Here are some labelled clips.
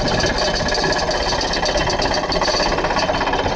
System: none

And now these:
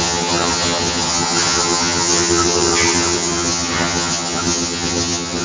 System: vocoder, HiFi-GAN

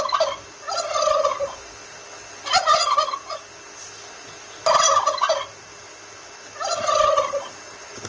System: none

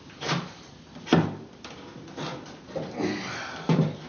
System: none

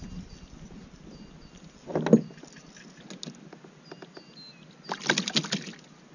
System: none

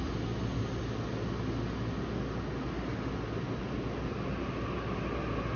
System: none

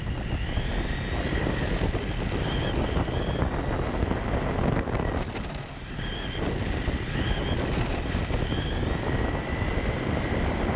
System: none